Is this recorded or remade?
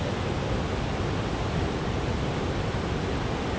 recorded